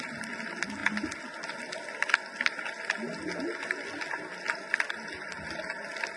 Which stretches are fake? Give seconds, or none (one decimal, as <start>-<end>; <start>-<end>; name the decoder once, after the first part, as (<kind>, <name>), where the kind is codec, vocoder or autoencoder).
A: none